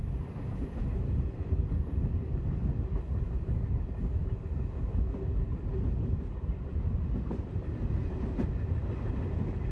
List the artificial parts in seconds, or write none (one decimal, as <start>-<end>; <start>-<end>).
none